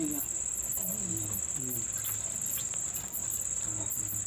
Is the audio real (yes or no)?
no